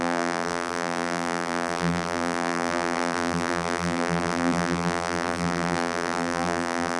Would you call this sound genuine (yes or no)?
no